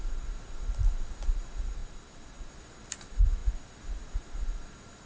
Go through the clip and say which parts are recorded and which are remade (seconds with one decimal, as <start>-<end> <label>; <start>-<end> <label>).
0.0-5.1 remade